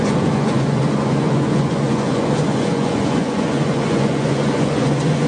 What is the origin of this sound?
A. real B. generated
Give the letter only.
B